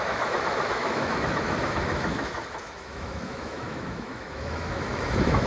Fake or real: fake